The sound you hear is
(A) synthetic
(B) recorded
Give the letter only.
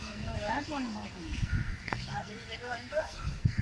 A